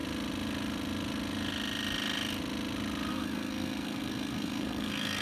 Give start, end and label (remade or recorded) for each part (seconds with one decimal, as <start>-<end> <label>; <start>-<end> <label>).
0.0-3.1 recorded; 3.1-5.2 remade